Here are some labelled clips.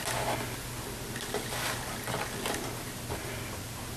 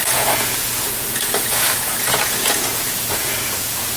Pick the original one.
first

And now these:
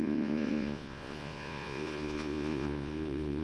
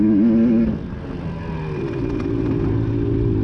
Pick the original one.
second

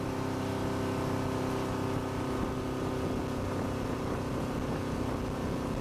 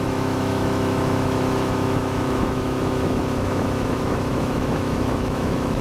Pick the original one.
first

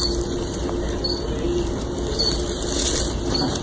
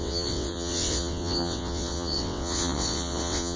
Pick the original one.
first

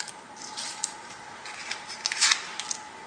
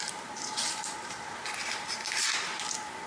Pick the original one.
first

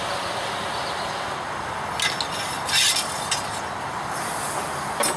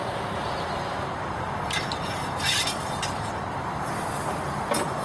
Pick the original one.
first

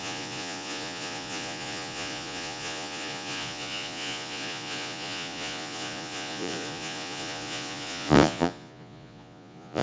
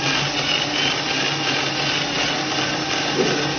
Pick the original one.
second